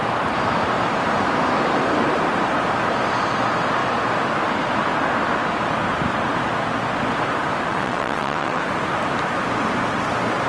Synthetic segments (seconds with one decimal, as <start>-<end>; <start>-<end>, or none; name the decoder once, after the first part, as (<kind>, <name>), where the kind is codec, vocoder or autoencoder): 7.7-8.6 (vocoder, WaveNeXt)